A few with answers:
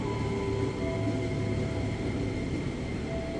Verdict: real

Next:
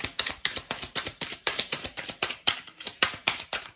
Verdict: fake